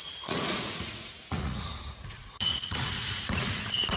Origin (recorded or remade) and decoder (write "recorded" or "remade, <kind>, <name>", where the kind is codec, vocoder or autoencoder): remade, vocoder, Vocos